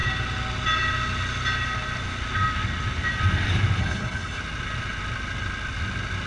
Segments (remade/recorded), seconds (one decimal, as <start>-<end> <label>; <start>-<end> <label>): 0.0-3.8 recorded; 3.8-4.4 remade; 4.4-6.3 recorded